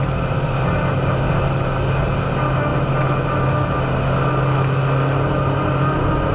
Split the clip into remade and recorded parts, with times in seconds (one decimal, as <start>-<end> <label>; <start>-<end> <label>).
0.0-6.3 recorded